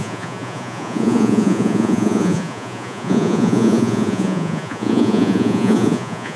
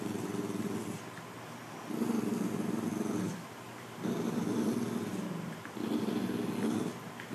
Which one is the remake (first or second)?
first